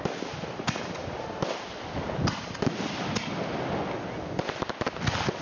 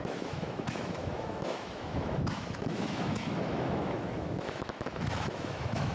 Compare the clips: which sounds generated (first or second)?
second